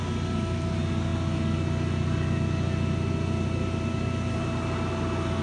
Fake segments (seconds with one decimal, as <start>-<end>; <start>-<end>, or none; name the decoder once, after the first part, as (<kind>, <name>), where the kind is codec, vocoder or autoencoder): none